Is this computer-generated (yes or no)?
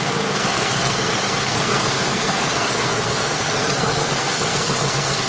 yes